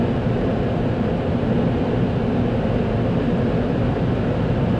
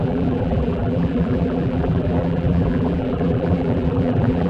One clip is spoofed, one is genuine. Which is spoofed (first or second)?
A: second